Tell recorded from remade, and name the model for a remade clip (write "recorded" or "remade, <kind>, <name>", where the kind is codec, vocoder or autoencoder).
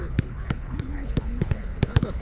remade, codec, HILCodec